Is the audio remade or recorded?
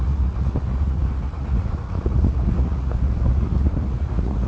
remade